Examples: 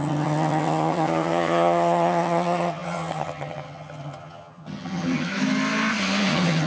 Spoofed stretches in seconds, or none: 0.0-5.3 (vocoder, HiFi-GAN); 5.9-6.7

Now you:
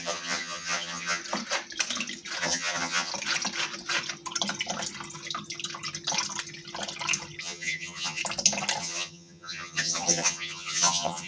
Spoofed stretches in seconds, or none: 0.0-1.2 (vocoder, HiFi-GAN); 2.4-3.1; 7.4-8.2; 8.8-11.3

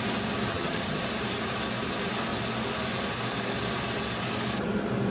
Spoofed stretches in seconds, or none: 0.5-1.0 (vocoder, HiFi-GAN)

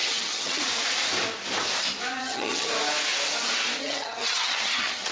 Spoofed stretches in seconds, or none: 0.0-0.6 (vocoder, HiFi-GAN); 2.2-2.7; 3.8-5.1